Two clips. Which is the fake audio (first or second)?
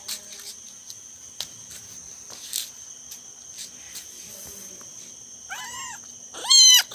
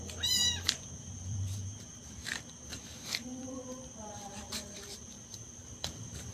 second